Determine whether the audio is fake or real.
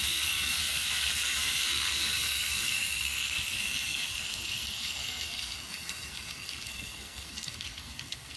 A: fake